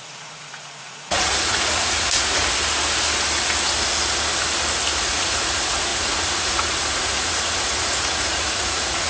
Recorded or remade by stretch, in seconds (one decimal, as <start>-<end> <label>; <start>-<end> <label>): 0.0-2.4 remade; 2.4-5.0 recorded; 5.0-9.1 remade